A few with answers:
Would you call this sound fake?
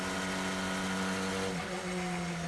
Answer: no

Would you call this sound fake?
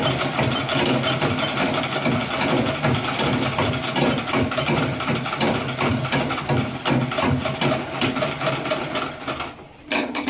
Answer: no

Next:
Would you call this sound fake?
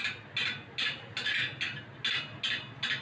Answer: no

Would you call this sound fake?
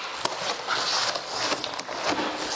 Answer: no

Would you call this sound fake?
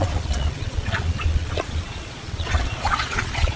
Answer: yes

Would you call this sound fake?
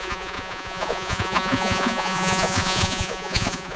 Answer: yes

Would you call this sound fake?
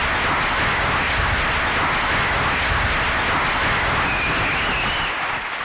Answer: no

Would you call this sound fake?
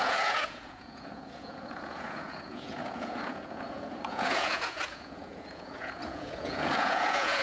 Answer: yes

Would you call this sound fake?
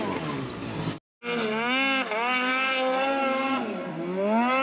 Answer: no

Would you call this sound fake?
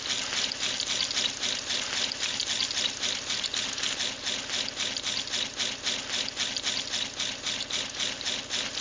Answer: no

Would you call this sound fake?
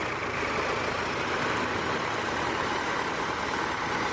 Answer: no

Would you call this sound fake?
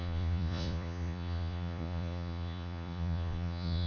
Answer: yes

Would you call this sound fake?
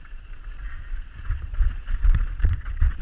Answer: yes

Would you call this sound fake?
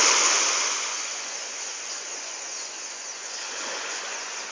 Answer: yes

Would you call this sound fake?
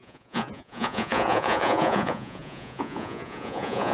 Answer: yes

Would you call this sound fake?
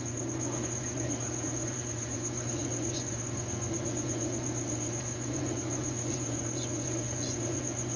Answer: yes